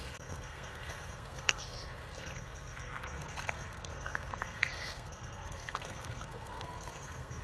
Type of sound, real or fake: fake